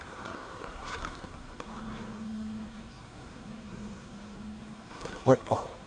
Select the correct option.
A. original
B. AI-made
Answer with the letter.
B